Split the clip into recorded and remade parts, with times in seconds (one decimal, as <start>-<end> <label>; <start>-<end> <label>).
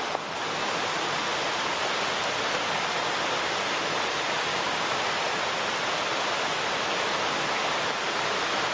0.0-4.5 recorded; 4.5-5.0 remade; 5.0-8.7 recorded